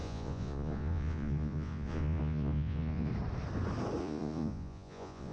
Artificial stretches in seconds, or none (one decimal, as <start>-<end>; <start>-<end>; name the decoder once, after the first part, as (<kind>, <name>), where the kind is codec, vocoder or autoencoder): 0.0-3.1 (vocoder, Vocos); 4.0-5.3